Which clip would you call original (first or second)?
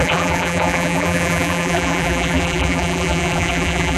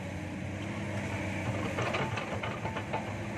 second